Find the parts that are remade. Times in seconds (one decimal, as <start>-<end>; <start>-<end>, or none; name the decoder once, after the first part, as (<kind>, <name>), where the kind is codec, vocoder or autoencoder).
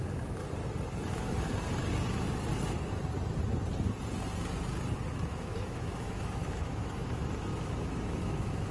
0.0-0.4 (autoencoder, DAC-VAE); 1.1-1.5; 5.1-8.7